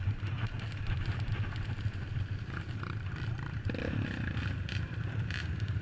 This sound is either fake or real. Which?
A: fake